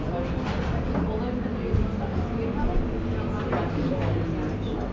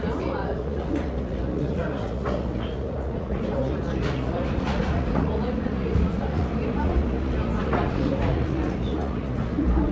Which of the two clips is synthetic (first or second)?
second